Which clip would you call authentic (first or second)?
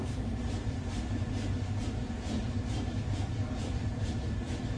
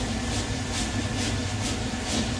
second